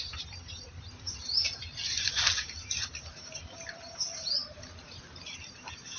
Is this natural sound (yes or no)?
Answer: no